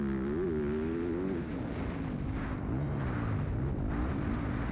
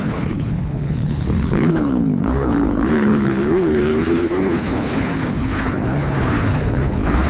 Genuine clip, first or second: first